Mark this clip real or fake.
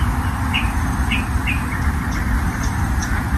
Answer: real